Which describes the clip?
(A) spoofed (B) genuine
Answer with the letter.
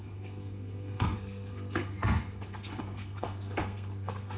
A